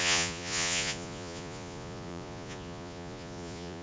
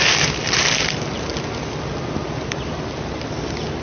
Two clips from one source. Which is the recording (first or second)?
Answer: second